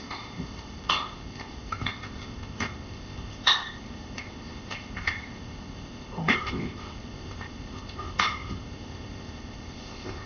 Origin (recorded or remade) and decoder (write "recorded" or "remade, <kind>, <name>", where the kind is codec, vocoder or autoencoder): remade, codec, ZipCodec